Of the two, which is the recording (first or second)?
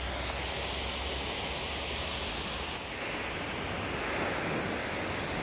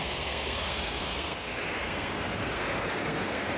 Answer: first